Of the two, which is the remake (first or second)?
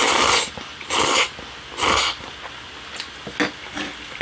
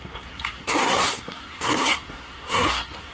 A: second